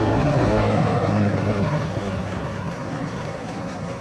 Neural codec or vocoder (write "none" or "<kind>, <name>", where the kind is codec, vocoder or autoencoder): codec, SNAC